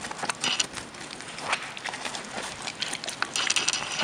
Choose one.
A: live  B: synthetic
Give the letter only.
A